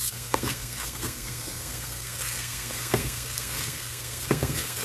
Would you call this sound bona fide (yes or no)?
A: no